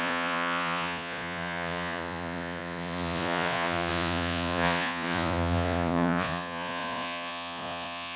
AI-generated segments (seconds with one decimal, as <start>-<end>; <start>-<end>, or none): 0.0-8.2